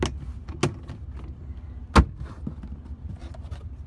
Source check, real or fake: real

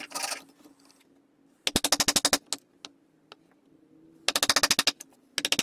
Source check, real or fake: real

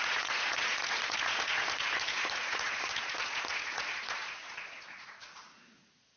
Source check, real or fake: fake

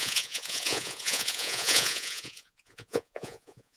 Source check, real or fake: fake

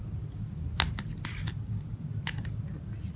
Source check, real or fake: real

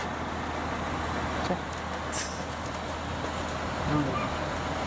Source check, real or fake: real